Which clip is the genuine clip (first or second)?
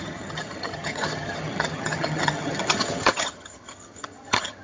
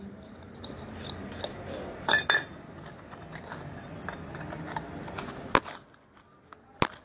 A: second